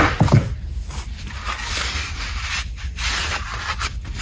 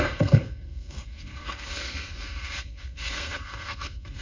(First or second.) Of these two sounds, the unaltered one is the first